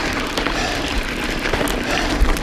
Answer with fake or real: real